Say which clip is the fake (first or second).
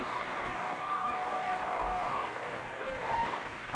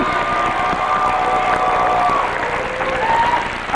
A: first